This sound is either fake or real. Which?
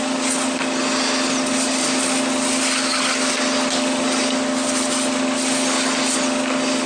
real